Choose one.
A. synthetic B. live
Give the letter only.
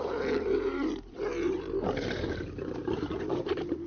A